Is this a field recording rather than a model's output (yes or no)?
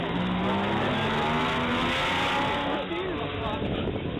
yes